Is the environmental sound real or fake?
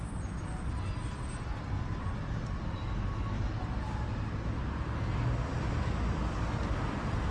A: real